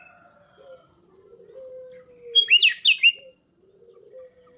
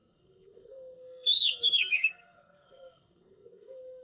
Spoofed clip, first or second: second